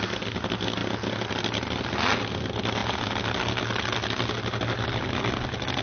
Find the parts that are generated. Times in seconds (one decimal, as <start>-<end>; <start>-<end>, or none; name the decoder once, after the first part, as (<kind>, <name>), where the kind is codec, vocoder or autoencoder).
none